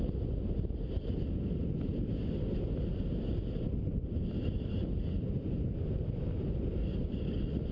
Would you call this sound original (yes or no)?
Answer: yes